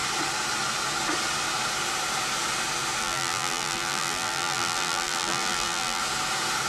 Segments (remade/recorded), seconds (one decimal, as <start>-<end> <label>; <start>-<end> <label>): 0.0-3.0 recorded; 3.0-6.0 remade; 6.0-6.7 recorded